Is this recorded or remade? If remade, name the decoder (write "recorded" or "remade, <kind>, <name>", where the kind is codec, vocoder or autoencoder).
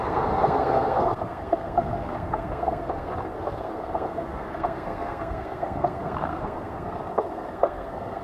remade, codec, SNAC